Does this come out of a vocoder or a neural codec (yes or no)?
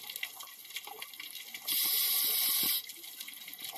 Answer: no